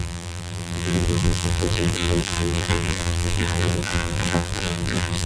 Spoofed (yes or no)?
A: yes